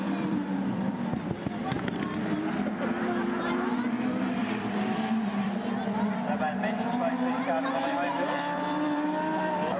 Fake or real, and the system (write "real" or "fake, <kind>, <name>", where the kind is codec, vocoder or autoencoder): fake, vocoder, BigVGAN v2